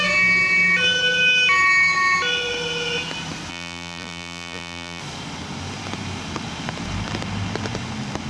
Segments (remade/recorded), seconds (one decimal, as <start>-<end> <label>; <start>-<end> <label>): 0.0-3.5 recorded; 3.5-5.0 remade; 5.0-8.3 recorded